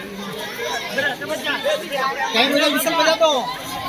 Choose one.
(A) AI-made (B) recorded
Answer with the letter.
A